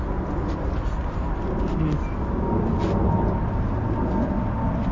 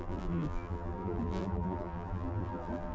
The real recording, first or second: first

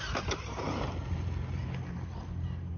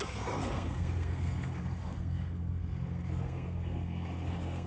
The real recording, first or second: first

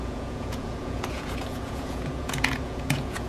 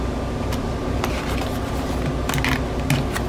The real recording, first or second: second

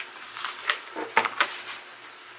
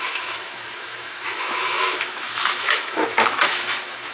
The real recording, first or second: first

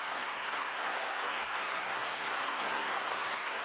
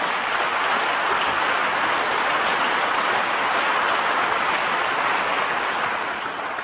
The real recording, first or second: second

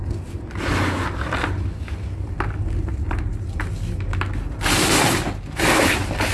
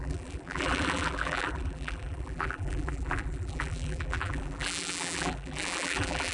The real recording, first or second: first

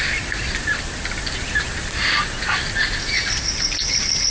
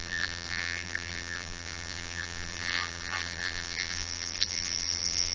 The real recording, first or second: first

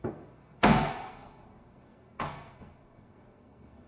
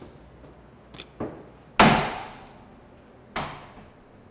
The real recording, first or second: second